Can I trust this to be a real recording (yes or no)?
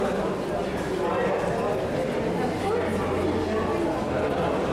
yes